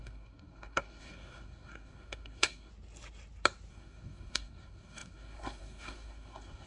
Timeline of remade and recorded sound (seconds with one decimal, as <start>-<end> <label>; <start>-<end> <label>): 0.0-2.7 remade; 2.7-3.7 recorded; 3.7-6.7 remade